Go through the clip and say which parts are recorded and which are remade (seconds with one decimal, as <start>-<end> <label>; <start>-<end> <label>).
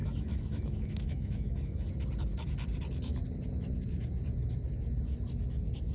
0.0-1.9 remade; 1.9-5.9 recorded